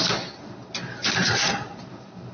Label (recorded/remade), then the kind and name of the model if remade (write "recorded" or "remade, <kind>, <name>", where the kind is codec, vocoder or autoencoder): recorded